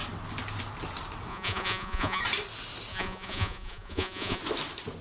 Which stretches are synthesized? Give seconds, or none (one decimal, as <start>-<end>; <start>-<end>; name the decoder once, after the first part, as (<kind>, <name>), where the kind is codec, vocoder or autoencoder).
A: 1.3-2.2 (vocoder, Vocos); 2.9-4.4